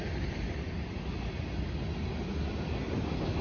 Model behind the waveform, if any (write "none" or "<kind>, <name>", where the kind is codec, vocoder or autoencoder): none